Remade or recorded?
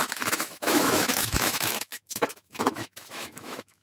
remade